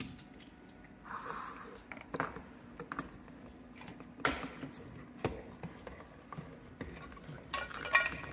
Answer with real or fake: real